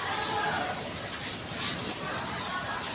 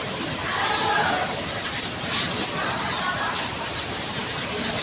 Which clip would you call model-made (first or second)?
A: second